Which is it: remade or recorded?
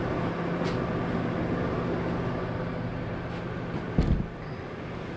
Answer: recorded